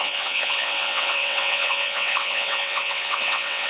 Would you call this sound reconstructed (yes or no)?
yes